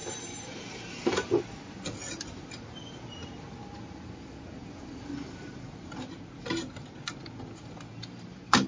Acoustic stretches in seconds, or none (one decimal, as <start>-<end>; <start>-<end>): 0.0-8.7